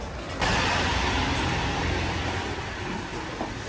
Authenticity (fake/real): real